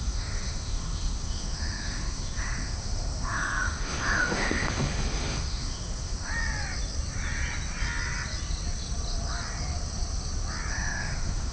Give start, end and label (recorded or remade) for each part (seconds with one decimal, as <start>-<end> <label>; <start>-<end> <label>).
0.0-6.3 remade; 6.3-10.7 recorded; 10.7-11.5 remade